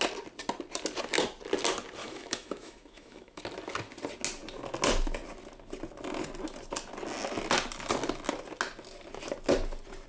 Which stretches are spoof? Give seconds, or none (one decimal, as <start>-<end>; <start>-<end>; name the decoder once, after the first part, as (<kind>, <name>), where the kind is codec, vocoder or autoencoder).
2.0-3.4 (autoencoder, DAC-VAE)